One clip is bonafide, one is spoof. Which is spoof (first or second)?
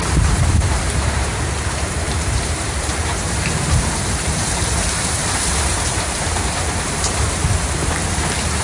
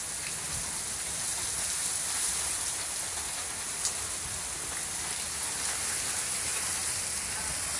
first